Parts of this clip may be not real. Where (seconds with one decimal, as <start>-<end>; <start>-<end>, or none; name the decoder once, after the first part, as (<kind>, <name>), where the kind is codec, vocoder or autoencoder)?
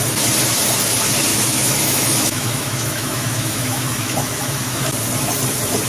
1.3-4.8 (autoencoder, DAC-VAE)